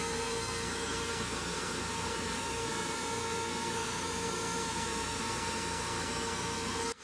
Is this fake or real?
fake